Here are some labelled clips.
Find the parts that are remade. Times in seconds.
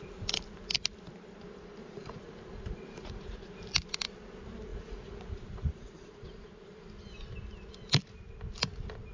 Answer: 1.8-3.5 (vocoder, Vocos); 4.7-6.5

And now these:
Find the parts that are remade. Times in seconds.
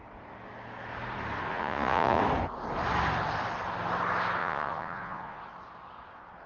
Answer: 1.5-2.2 (vocoder, Vocos); 4.4-5.4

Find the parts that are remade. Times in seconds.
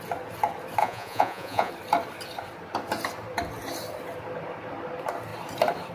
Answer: 0.8-1.7 (vocoder, Vocos)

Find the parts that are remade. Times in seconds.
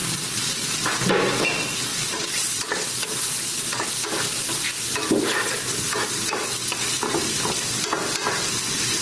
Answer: 0.0-0.7 (vocoder, Vocos); 1.9-3.9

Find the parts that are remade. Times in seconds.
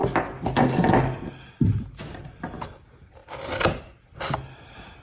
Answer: none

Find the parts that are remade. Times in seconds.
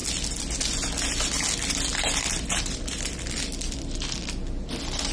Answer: none